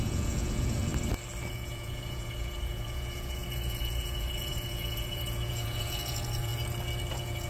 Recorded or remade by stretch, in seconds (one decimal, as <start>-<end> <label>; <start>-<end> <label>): 0.0-0.9 remade; 0.9-1.5 recorded; 1.5-6.5 remade; 6.5-7.1 recorded; 7.1-7.5 remade